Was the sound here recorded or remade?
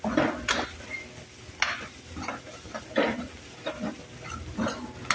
recorded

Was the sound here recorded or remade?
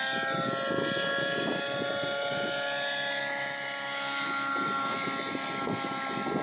recorded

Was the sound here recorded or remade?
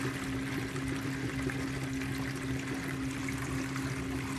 recorded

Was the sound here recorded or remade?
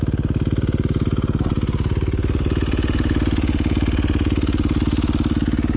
recorded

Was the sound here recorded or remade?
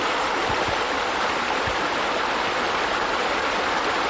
recorded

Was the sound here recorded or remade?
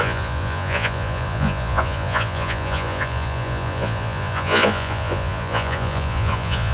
remade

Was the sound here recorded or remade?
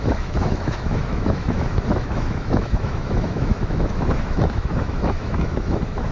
remade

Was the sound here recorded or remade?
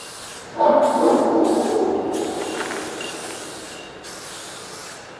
recorded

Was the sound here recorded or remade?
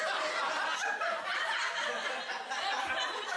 recorded